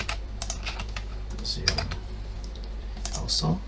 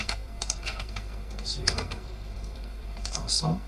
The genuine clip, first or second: first